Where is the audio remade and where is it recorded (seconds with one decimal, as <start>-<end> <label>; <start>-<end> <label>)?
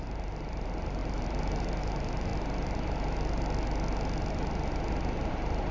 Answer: 0.0-2.3 remade; 2.3-5.3 recorded; 5.3-5.7 remade